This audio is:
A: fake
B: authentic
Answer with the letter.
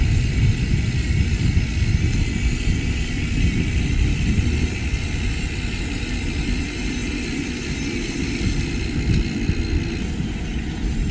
B